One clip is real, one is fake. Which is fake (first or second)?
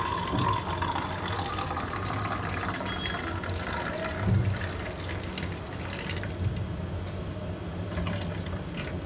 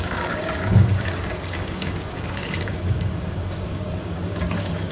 second